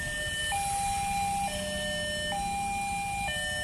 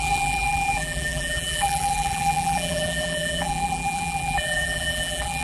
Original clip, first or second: first